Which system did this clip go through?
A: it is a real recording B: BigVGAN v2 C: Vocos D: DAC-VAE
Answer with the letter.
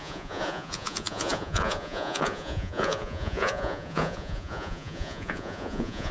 C